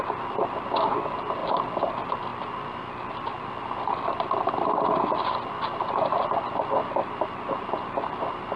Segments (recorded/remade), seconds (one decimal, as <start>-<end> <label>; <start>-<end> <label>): 0.0-8.6 recorded

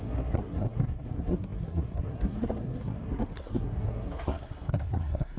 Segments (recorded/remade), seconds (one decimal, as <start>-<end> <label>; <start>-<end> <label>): 0.0-5.4 remade

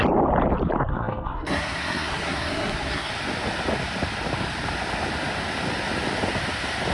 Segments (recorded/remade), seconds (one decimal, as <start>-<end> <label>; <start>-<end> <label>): 0.0-0.9 recorded; 0.9-3.1 remade; 3.1-6.9 recorded

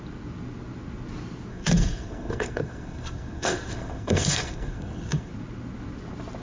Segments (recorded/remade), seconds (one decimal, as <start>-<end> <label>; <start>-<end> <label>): 0.0-1.5 recorded; 1.5-5.3 remade; 5.3-6.4 recorded

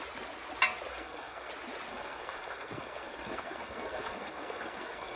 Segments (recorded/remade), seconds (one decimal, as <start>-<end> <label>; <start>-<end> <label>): 0.0-0.9 recorded; 0.9-1.5 remade; 1.5-1.9 recorded; 1.9-5.2 remade

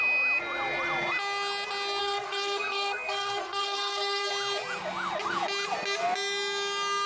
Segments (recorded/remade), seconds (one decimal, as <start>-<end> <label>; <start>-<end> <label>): 0.0-2.0 recorded; 2.0-4.3 remade; 4.3-7.1 recorded

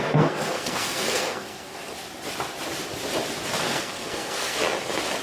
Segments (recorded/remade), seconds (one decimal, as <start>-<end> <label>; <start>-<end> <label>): 0.0-1.9 remade; 1.9-3.6 recorded; 3.6-4.6 remade; 4.6-5.2 recorded

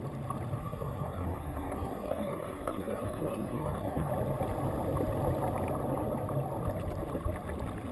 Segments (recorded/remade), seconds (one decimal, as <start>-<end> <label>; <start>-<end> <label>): 0.0-0.6 recorded; 0.6-4.1 remade; 4.1-7.9 recorded